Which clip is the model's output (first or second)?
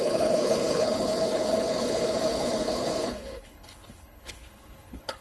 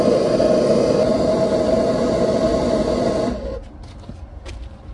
first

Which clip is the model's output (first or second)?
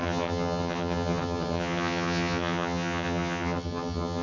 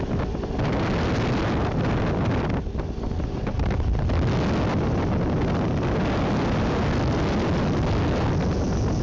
first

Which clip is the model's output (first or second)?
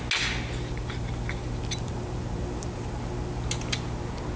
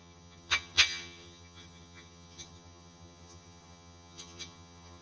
second